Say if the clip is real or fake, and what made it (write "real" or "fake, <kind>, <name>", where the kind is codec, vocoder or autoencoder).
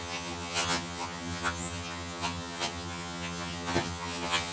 fake, vocoder, HiFi-GAN